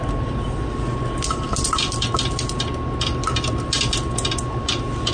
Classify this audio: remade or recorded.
recorded